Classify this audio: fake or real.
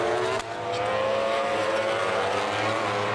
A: real